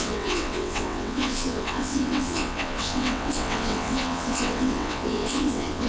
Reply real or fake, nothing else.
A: fake